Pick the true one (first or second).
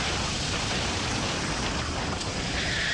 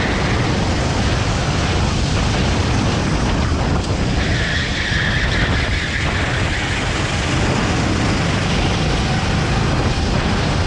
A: second